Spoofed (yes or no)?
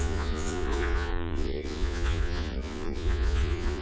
yes